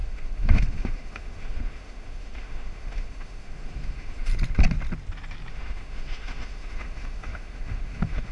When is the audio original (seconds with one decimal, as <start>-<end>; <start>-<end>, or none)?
4.3-5.5